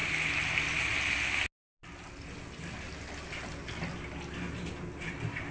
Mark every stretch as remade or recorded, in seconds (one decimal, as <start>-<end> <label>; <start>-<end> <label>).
0.0-5.5 recorded